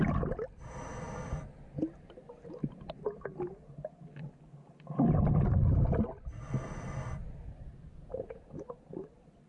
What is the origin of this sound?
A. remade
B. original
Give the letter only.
B